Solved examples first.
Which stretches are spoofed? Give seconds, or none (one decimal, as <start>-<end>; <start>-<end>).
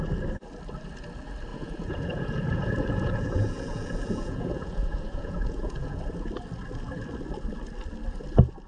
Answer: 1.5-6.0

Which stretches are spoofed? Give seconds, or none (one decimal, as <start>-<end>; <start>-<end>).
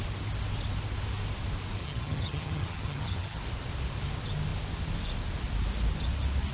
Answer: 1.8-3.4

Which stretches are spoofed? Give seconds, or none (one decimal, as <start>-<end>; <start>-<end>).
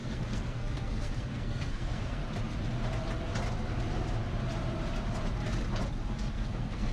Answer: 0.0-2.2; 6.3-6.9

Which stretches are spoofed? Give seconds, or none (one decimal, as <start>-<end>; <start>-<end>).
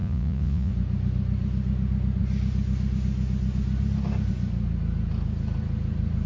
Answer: 0.0-0.7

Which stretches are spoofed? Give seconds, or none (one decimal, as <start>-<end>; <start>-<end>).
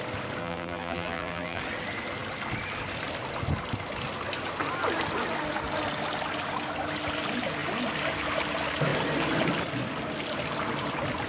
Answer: 0.4-1.6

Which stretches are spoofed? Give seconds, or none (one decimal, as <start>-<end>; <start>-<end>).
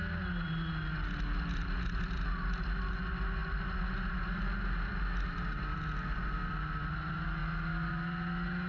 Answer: none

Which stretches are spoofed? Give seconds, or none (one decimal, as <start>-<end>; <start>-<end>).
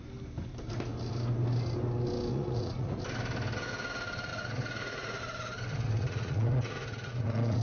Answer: 2.3-3.0; 4.3-5.2; 5.7-7.6